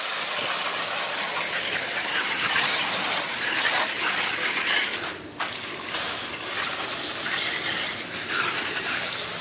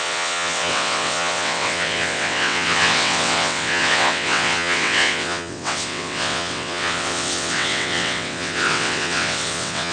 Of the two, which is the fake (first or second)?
second